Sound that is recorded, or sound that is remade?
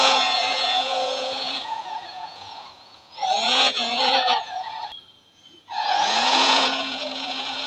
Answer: remade